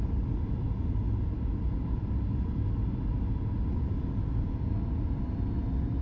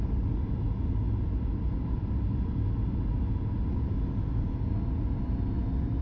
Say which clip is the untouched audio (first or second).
second